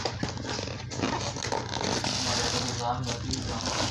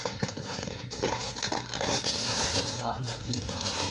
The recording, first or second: first